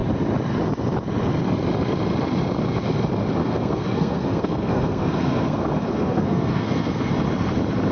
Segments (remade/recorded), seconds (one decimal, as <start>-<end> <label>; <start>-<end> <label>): 0.0-3.4 recorded; 3.4-7.1 remade; 7.1-7.9 recorded